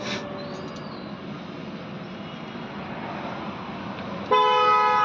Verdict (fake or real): real